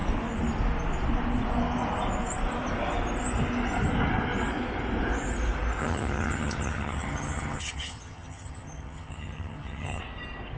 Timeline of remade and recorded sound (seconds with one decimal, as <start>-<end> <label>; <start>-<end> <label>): 0.0-5.8 recorded; 5.8-10.0 remade; 10.0-10.6 recorded